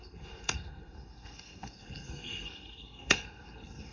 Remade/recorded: remade